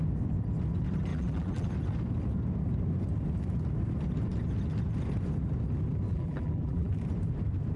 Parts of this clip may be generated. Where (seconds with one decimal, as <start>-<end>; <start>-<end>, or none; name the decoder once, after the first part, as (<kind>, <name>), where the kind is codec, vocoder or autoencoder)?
1.1-1.7 (vocoder, BigVGAN v2); 6.1-7.0